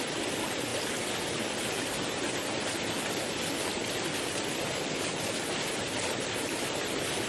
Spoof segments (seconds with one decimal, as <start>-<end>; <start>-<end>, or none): none